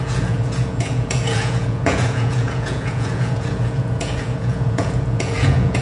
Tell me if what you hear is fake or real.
fake